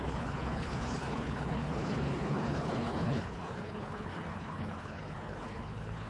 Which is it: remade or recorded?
remade